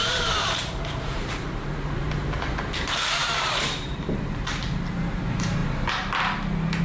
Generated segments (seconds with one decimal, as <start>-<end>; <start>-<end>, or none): 0.0-5.6